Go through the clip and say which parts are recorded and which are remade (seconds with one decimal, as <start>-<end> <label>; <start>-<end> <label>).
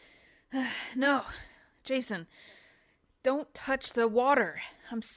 0.0-1.2 remade; 1.2-5.2 recorded